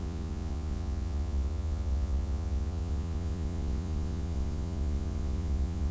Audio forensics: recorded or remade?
remade